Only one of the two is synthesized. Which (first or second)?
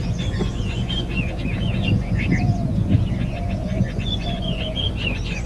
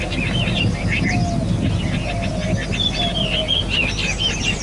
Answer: first